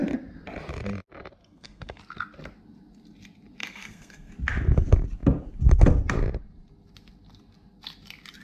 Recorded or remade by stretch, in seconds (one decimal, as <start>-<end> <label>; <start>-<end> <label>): 0.0-1.4 recorded; 1.4-2.0 remade; 2.0-3.6 recorded; 3.6-4.3 remade; 4.3-8.4 recorded